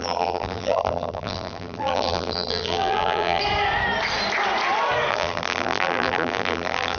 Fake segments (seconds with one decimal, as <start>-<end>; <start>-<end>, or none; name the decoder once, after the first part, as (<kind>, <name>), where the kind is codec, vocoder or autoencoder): 0.0-3.4 (vocoder, BigVGAN v2); 5.1-7.0